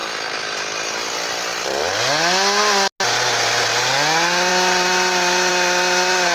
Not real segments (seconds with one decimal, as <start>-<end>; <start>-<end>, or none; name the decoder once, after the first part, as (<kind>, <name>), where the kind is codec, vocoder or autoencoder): none